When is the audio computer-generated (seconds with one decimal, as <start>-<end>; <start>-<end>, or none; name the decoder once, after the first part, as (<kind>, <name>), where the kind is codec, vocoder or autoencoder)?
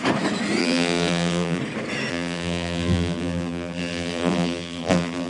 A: 0.6-1.6 (vocoder, BigVGAN v2); 2.1-5.3